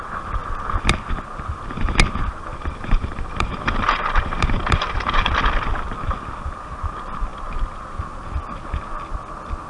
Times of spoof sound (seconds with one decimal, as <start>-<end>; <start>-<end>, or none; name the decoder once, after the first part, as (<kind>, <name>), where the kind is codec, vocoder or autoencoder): 2.5-5.3 (vocoder, BigVGAN v2)